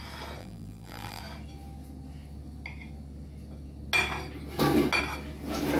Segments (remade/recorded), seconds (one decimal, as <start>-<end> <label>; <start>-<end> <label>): 0.0-0.4 recorded; 0.4-1.2 remade; 1.2-5.8 recorded